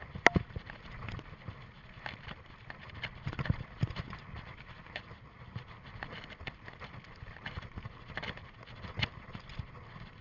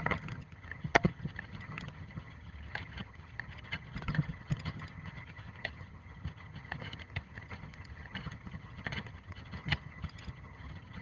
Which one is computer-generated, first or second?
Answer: second